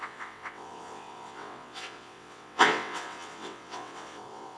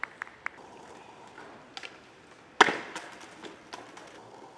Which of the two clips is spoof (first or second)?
first